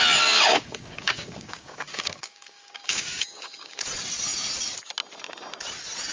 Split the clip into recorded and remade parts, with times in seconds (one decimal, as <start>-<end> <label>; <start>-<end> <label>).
0.0-0.5 recorded; 0.5-3.8 remade; 3.8-6.1 recorded